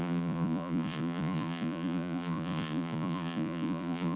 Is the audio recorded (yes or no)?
no